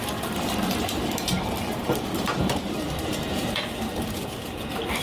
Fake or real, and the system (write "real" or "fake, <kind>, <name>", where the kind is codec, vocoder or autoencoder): fake, vocoder, BigVGAN v2